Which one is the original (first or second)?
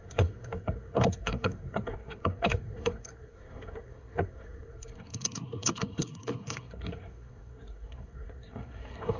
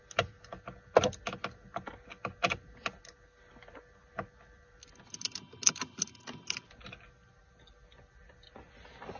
second